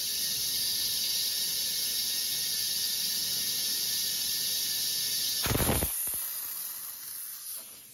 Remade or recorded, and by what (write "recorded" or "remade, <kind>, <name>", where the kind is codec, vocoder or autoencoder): recorded